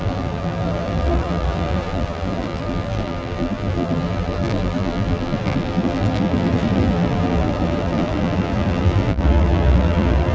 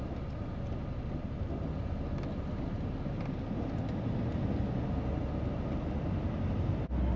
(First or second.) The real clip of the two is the second